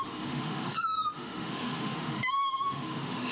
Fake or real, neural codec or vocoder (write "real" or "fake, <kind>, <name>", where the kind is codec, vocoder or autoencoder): fake, autoencoder, DAC-VAE